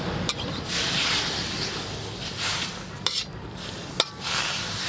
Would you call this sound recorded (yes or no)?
yes